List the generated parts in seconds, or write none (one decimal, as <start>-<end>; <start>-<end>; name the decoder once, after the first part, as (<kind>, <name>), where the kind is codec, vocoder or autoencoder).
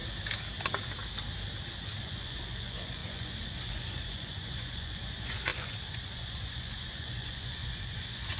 2.0-8.4 (vocoder, Vocos)